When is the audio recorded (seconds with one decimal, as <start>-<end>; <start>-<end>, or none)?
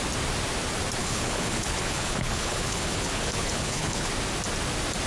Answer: 0.0-1.0; 4.1-5.1